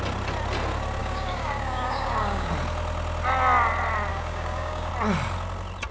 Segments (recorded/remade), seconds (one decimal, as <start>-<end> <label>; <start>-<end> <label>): 0.0-1.0 recorded; 1.0-2.5 remade; 2.5-4.1 recorded; 4.1-4.9 remade; 4.9-5.9 recorded